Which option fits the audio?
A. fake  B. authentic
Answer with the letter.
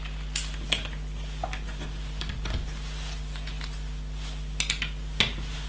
B